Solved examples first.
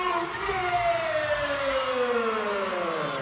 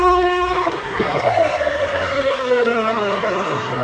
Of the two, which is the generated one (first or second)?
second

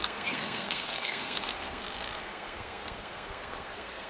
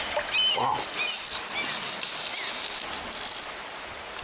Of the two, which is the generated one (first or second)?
first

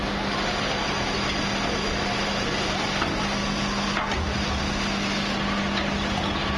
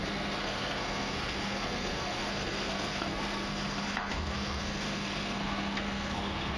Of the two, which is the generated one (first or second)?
second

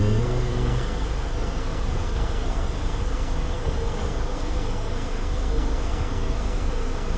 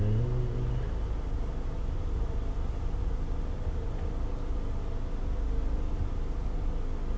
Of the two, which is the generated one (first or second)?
first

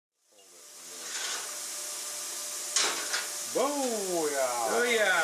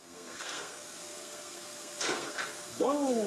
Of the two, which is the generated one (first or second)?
second